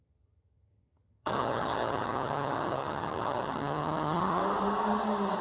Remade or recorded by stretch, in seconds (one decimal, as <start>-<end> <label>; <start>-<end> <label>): 0.0-4.4 remade; 4.4-5.4 recorded